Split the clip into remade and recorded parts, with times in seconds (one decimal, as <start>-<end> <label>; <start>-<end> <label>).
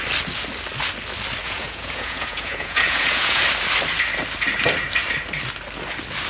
0.0-1.4 recorded; 1.4-3.4 remade; 3.4-6.3 recorded